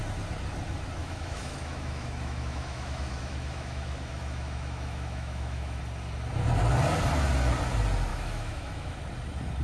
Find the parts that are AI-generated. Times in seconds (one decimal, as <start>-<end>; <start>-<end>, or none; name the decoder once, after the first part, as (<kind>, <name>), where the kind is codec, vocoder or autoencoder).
1.0-5.8 (autoencoder, DAC-VAE); 8.1-9.0